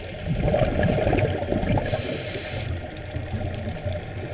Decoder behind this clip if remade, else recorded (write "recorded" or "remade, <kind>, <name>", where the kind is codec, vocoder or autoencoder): remade, vocoder, BigVGAN v2